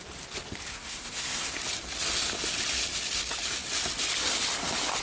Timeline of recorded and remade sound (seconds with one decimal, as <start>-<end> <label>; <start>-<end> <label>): 0.0-0.7 recorded; 0.7-1.5 remade; 1.5-5.0 recorded

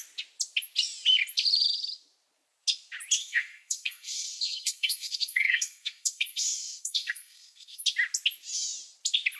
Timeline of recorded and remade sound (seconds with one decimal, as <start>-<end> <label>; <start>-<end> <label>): 0.0-3.2 recorded; 3.2-7.8 remade; 7.8-9.4 recorded

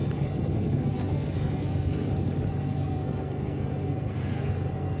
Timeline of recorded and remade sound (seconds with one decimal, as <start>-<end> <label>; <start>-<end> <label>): 0.0-2.1 remade; 2.1-2.5 recorded; 2.5-5.0 remade

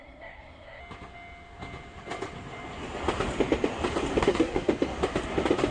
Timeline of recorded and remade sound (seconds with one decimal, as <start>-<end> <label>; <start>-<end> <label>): 0.0-0.8 remade; 0.8-4.2 recorded; 4.2-4.7 remade; 4.7-5.7 recorded

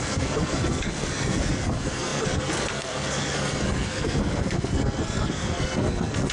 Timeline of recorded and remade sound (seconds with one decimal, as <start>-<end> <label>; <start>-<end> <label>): 0.0-6.3 remade

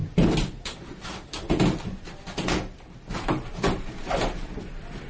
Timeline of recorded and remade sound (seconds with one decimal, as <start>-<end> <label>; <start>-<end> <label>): 0.0-5.1 recorded

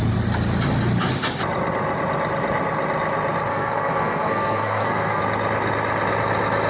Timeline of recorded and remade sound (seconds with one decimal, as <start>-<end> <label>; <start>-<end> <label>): 0.0-3.5 recorded; 3.5-5.2 remade; 5.2-6.7 recorded